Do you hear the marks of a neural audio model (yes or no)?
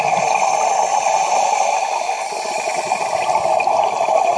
no